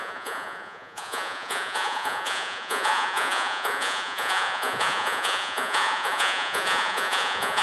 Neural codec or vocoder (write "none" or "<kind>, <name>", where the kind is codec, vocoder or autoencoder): vocoder, Vocos